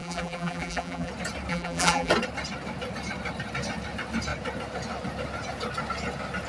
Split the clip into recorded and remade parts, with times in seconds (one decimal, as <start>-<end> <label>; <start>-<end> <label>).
0.0-1.1 remade; 1.1-1.5 recorded; 1.5-2.1 remade; 2.1-6.5 recorded